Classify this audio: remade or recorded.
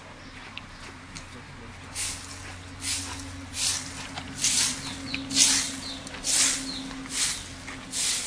recorded